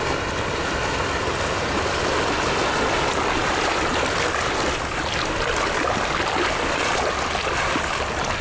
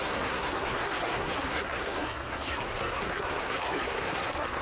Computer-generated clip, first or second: second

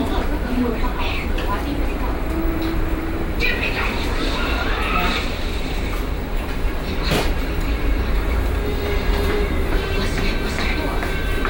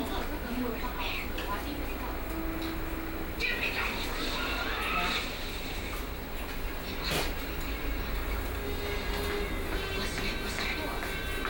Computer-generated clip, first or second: first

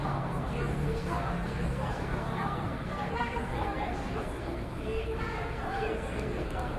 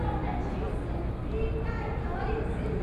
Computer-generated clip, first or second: first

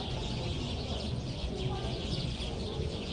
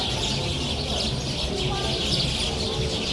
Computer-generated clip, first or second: first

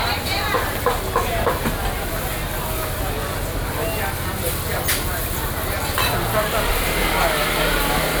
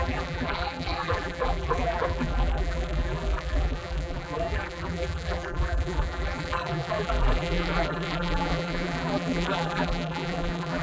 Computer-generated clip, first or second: second